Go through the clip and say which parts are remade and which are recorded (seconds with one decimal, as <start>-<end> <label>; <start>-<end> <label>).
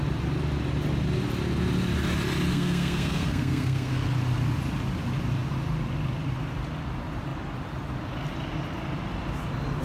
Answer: 0.0-2.5 recorded; 2.5-3.9 remade; 3.9-9.8 recorded